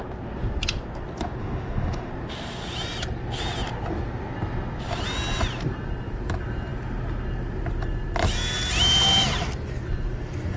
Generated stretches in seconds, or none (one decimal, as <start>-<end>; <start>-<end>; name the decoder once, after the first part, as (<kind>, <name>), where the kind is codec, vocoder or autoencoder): 1.4-2.1 (autoencoder, DAC-VAE)